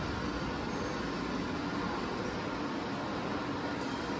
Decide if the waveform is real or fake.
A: real